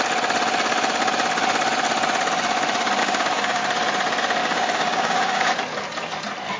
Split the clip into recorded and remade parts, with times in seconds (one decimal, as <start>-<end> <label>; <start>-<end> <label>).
0.0-3.0 recorded; 3.0-3.6 remade; 3.6-4.4 recorded; 4.4-5.5 remade; 5.5-6.6 recorded